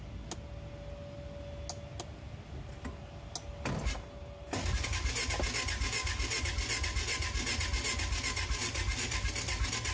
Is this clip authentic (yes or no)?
yes